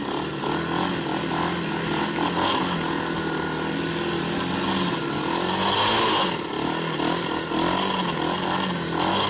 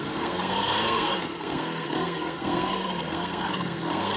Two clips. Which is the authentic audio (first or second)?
first